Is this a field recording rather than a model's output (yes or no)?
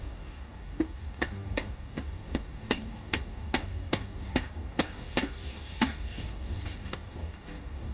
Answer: no